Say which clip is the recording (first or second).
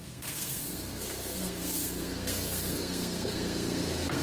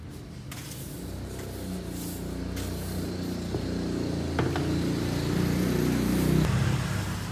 second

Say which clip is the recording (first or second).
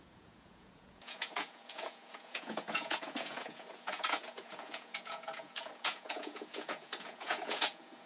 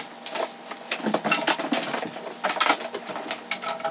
second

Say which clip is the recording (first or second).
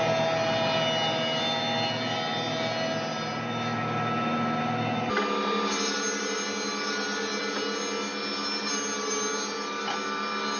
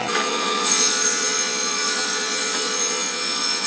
first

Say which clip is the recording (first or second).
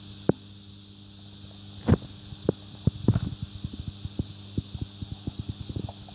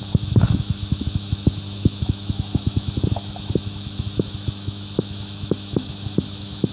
first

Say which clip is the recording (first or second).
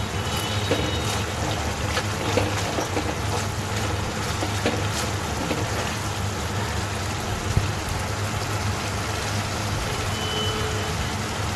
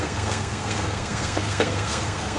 first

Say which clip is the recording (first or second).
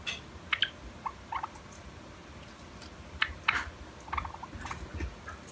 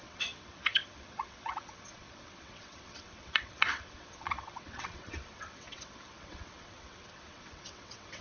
first